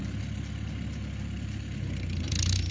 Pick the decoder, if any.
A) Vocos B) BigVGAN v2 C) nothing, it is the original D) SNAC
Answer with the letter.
C